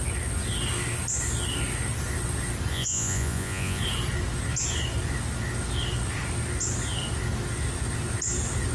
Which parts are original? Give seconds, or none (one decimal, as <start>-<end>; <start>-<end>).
0.0-2.7; 3.8-8.7